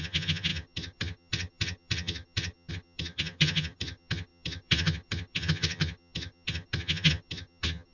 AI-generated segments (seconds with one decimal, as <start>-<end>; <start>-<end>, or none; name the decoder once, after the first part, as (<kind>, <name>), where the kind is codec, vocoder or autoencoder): 0.0-7.9 (vocoder, HiFi-GAN)

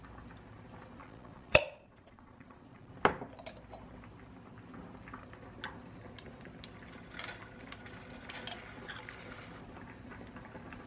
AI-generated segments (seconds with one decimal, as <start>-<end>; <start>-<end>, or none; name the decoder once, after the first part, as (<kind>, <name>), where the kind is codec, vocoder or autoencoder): 1.0-2.9 (vocoder, Vocos)

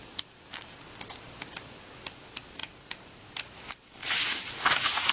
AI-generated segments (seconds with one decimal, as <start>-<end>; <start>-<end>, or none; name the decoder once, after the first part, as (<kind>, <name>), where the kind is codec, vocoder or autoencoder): 2.6-3.2 (vocoder, Vocos); 4.0-5.1

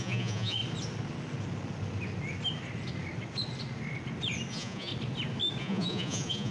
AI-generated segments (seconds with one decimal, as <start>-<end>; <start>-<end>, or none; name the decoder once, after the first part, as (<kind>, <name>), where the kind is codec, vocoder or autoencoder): 0.0-0.6 (vocoder, Vocos); 4.5-4.9; 5.6-6.5

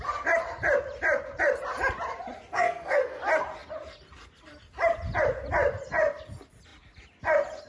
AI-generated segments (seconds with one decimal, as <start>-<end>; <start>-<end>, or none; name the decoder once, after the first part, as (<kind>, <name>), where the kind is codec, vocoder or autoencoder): 2.5-3.2 (codec, SNAC)

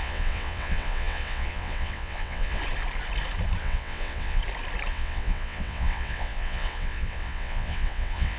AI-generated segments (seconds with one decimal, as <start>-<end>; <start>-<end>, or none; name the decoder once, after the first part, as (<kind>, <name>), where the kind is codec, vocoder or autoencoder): 0.0-2.6 (vocoder, WaveNeXt); 3.6-4.4; 4.9-8.4

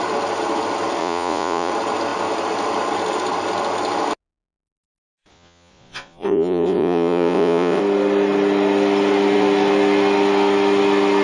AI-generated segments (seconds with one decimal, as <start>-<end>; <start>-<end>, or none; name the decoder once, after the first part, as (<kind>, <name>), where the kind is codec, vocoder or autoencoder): 1.0-1.7 (vocoder, Vocos); 5.3-7.8